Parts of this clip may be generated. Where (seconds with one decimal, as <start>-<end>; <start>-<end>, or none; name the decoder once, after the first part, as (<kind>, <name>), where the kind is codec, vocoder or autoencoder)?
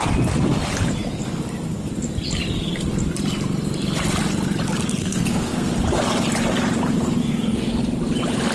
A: 5.0-5.7 (codec, SNAC); 7.2-7.7